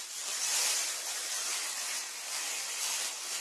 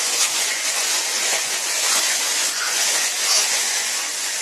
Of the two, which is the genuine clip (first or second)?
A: first